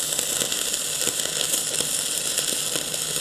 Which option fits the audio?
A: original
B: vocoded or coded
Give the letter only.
A